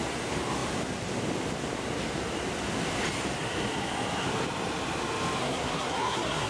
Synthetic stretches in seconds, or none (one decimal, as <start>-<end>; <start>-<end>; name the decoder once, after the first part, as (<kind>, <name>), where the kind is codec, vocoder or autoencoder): 5.4-6.5 (codec, SNAC)